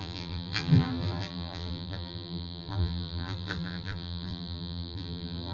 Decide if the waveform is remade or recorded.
remade